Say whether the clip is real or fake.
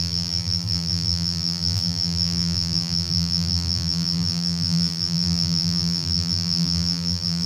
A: fake